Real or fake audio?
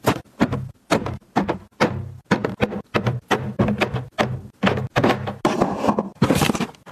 real